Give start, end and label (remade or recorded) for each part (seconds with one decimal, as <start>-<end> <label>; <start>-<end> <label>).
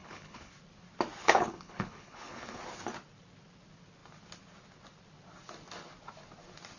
0.0-0.5 remade; 0.5-1.2 recorded; 1.2-2.6 remade; 2.6-6.8 recorded